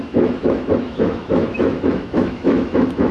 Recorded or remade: remade